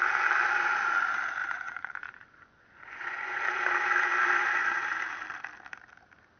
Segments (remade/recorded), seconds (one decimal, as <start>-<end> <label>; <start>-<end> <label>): 0.0-1.4 recorded; 1.4-3.4 remade; 3.4-6.4 recorded